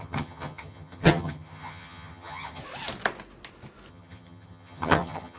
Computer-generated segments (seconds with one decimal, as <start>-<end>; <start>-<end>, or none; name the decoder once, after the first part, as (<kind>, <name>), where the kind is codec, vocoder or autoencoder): 0.0-2.6 (vocoder, HiFi-GAN); 3.9-5.4

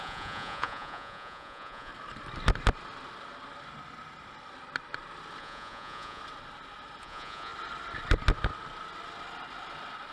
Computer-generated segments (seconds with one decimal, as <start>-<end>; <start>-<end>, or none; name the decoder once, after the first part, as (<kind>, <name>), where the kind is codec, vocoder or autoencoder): 0.0-1.9 (vocoder, Vocos); 5.4-6.2; 7.0-7.5

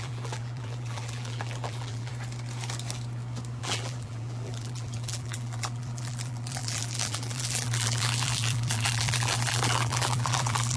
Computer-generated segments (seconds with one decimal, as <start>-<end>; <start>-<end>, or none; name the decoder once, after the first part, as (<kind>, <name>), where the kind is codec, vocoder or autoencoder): 0.0-2.1 (vocoder, BigVGAN v2); 3.6-10.8